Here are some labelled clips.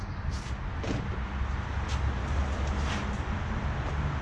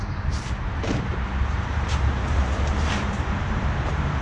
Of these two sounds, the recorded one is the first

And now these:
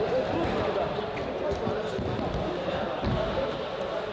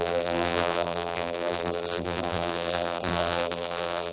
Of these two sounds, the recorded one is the first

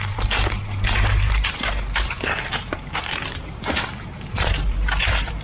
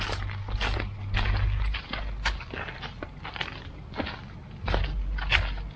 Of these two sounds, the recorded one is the second